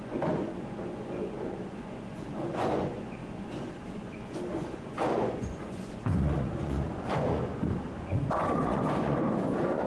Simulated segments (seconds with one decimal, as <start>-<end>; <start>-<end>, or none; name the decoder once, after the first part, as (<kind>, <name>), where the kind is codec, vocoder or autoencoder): 0.0-9.9 (vocoder, Vocos)